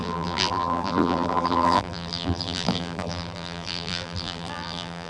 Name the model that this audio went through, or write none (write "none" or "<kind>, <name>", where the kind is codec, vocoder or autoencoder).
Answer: vocoder, BigVGAN v2